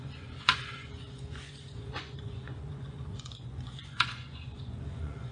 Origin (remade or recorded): remade